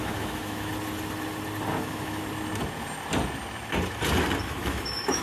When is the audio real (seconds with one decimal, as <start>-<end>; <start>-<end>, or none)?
0.7-1.8; 2.2-4.4